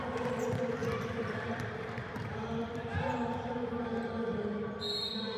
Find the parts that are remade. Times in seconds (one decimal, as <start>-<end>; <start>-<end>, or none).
0.8-3.5